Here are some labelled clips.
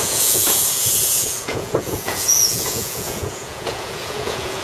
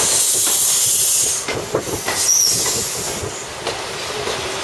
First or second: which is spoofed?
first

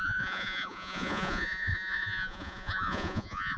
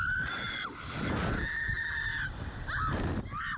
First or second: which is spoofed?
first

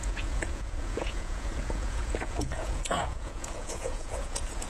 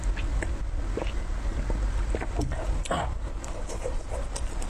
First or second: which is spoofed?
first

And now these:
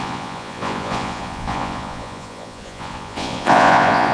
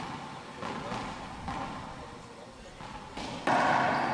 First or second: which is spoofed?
first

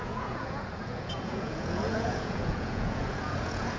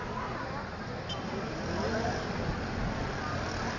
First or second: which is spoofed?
first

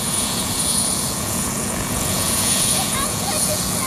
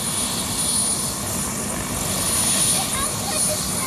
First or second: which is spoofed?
first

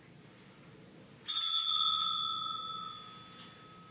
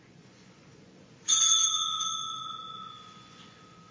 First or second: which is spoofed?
second